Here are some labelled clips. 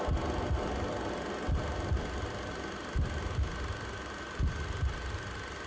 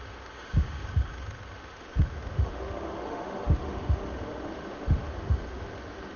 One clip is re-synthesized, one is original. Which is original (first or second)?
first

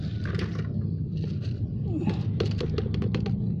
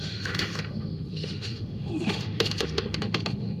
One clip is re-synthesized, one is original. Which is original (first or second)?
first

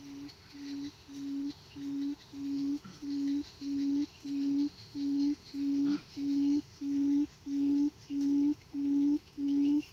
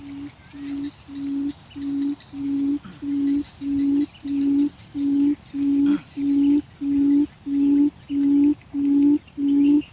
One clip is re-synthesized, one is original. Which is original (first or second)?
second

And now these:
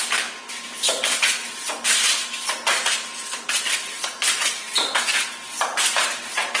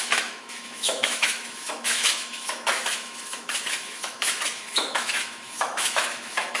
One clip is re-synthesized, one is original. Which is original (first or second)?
first